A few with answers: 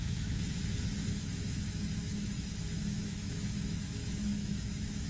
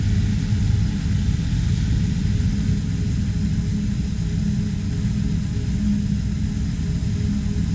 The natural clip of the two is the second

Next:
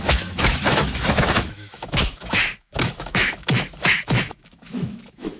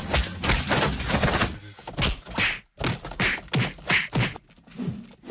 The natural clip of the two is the second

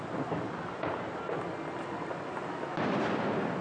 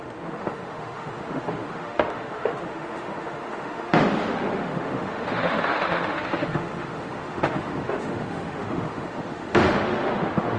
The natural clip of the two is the first